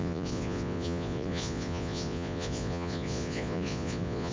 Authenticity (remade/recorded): remade